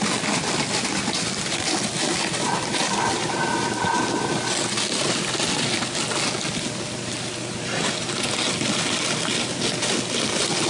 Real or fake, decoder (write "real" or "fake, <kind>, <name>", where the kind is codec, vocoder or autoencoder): real